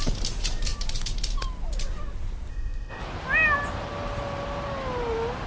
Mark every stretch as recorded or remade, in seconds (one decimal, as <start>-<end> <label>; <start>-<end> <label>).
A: 0.0-2.5 recorded; 2.5-3.0 remade; 3.0-5.5 recorded